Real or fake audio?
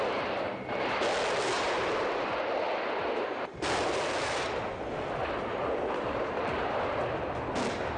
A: real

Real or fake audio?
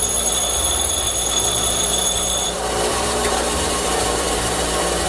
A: fake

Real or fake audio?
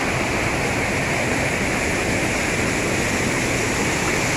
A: real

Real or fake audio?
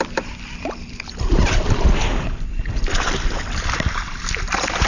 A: real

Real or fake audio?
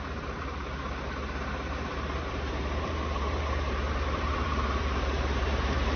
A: fake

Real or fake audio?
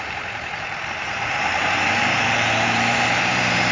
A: fake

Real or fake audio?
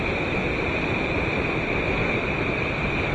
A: fake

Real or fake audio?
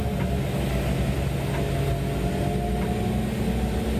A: real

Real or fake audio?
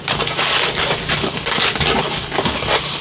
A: real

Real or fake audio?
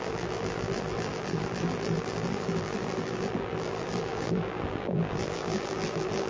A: fake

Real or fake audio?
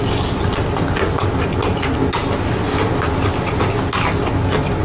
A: real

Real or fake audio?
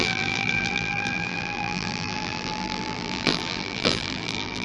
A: fake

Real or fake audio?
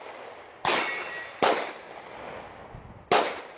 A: real